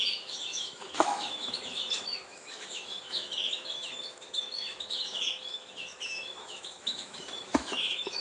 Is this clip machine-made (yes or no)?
yes